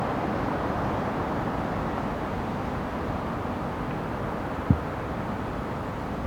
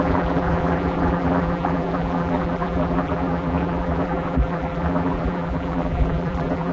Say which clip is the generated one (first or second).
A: second